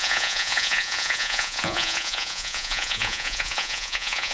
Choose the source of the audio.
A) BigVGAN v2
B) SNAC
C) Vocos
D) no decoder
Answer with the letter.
C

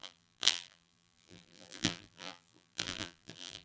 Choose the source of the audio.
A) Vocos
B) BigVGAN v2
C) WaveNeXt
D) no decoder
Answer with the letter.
B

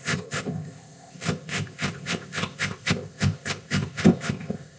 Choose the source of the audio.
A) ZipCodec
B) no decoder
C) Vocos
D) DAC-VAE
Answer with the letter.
A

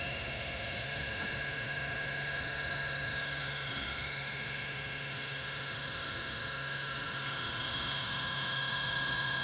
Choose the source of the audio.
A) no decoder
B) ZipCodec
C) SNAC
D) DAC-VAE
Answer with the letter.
D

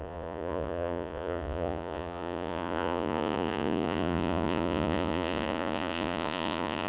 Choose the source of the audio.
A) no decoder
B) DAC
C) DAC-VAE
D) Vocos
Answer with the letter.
D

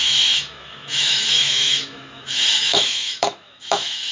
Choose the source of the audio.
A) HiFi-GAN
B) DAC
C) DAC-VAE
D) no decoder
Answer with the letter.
C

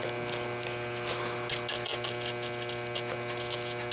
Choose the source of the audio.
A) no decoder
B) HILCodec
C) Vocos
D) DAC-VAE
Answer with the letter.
A